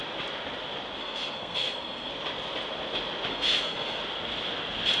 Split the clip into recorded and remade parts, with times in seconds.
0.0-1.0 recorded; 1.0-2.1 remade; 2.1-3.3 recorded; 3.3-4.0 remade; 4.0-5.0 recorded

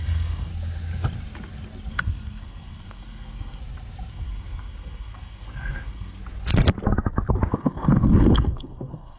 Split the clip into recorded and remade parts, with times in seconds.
0.0-0.5 remade; 0.5-1.9 recorded; 1.9-3.6 remade; 3.6-4.1 recorded; 4.1-6.2 remade; 6.2-7.5 recorded; 7.5-9.2 remade

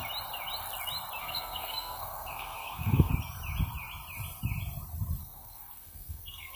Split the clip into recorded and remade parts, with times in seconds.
0.0-1.2 recorded; 1.2-3.1 remade; 3.1-5.2 recorded; 5.2-6.6 remade

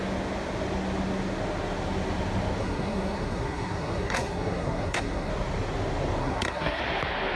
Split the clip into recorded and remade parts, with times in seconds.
0.0-2.6 recorded; 2.6-5.3 remade; 5.3-6.2 recorded; 6.2-6.8 remade; 6.8-7.4 recorded

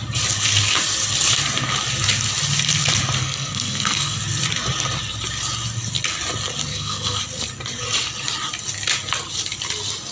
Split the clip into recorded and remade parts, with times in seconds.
0.0-3.2 recorded; 3.2-4.2 remade; 4.2-6.7 recorded; 6.7-7.2 remade; 7.2-10.1 recorded